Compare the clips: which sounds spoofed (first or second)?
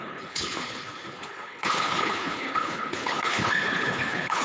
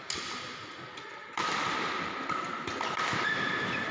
first